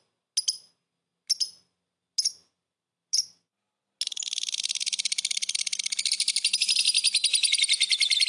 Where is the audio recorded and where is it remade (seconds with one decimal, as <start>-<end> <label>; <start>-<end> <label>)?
0.0-8.3 recorded